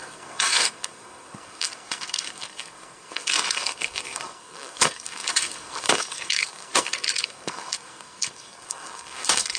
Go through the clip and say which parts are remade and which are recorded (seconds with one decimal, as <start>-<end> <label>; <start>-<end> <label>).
0.0-9.6 remade